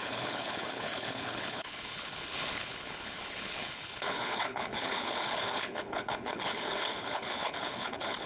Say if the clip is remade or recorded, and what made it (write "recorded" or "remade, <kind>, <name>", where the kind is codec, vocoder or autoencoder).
remade, codec, HILCodec